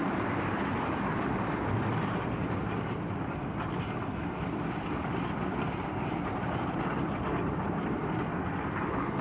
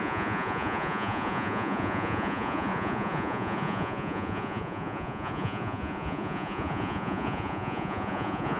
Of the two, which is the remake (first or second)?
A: second